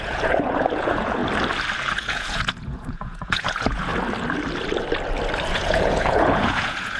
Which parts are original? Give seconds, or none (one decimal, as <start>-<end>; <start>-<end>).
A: 1.2-1.9; 3.9-5.5